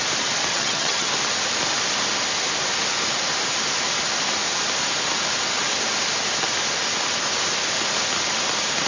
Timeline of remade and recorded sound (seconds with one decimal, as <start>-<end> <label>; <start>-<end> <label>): 0.0-0.5 recorded; 0.5-1.1 remade; 1.1-8.9 recorded